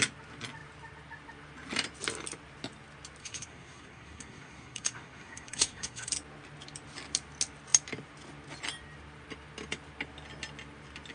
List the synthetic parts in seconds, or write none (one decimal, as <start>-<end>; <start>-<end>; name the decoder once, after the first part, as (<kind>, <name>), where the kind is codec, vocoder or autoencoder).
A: 3.2-6.1 (codec, SNAC)